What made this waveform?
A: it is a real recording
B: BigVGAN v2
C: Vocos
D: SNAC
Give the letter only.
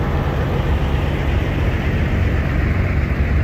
A